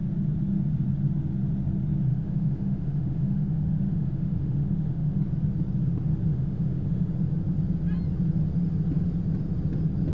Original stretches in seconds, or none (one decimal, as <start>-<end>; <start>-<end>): 0.0-2.1; 5.2-6.3; 7.1-10.1